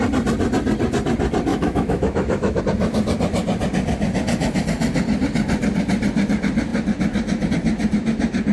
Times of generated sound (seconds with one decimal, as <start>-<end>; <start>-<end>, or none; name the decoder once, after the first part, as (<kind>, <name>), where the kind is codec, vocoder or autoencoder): 1.5-2.6 (autoencoder, DAC-VAE)

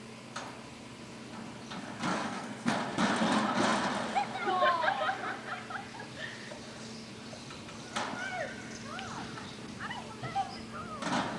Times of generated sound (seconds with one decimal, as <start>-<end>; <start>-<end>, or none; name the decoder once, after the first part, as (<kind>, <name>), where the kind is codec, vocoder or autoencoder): 2.1-2.7 (codec, SNAC)

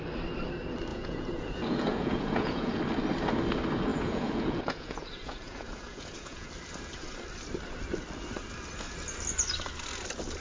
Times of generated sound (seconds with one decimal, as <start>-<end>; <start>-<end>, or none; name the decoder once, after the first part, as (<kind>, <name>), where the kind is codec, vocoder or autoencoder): 0.9-2.8 (vocoder, Vocos); 3.9-6.5

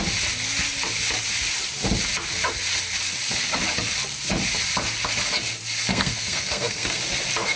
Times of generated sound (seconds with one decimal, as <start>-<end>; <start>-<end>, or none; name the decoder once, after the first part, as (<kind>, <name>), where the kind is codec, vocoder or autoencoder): 5.9-7.0 (codec, SNAC)

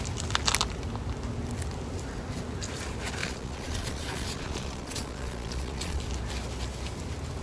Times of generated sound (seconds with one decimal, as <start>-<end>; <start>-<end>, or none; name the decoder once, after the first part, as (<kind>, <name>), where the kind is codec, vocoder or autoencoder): 3.2-6.0 (vocoder, Vocos)

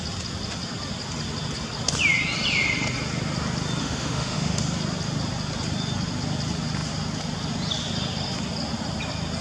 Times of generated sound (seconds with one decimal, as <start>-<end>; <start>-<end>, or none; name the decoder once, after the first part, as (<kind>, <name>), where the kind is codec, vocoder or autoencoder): 3.8-4.6 (autoencoder, DAC-VAE)

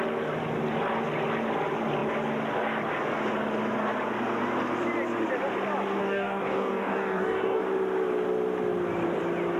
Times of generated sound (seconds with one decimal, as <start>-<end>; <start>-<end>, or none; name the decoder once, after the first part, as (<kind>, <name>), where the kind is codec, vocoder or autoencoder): 6.0-7.6 (codec, DAC)